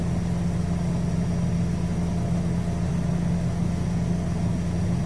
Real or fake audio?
real